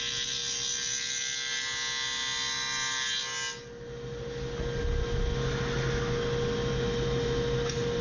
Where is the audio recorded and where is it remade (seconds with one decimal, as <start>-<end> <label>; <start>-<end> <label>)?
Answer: 0.0-8.0 recorded